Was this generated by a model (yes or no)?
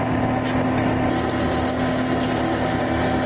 no